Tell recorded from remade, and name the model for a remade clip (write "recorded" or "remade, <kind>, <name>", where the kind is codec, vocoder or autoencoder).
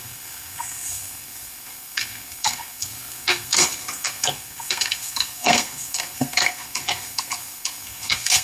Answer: remade, codec, SNAC